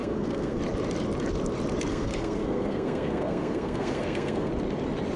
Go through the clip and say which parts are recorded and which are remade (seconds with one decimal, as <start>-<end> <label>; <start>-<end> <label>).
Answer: 0.0-0.6 remade; 0.6-1.9 recorded; 1.9-4.5 remade; 4.5-5.2 recorded